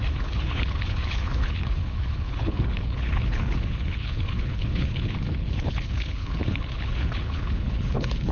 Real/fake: fake